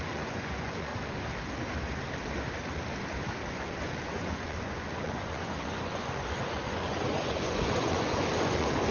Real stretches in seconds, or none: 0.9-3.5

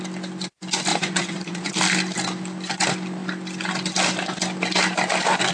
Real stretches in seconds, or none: 0.0-0.9; 1.7-5.5

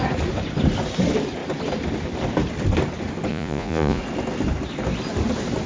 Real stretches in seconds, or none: 0.0-3.3; 4.0-5.7